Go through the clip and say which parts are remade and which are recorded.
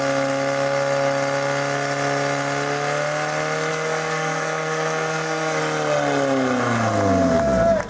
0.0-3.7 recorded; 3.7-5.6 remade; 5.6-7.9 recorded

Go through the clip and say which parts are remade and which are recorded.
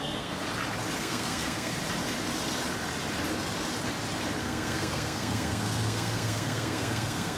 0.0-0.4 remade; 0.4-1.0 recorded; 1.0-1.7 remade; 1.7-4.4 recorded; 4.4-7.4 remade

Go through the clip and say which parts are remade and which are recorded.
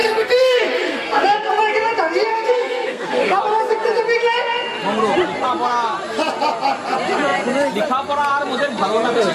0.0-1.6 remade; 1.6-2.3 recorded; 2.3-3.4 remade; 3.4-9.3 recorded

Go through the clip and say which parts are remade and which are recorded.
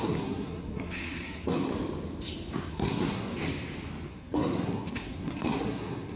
0.0-1.7 remade; 1.7-2.7 recorded; 2.7-3.3 remade; 3.3-4.1 recorded; 4.1-6.2 remade